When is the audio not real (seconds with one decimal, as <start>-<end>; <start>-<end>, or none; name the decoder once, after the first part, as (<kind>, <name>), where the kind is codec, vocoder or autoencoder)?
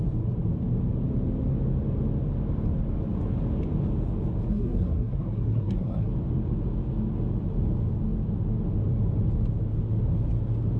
4.5-6.1 (codec, SNAC)